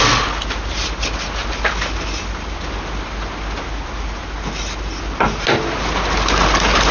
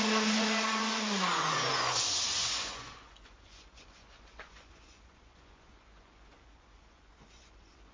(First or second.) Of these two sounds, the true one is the first